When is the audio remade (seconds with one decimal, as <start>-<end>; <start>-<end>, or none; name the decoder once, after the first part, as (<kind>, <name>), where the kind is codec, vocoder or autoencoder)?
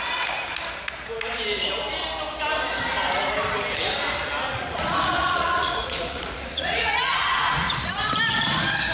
4.5-8.1 (vocoder, Vocos)